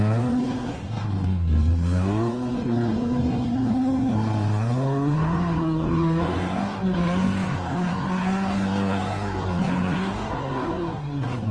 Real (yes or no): no